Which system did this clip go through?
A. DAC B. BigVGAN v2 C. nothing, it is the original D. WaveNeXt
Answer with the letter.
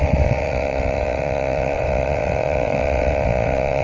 D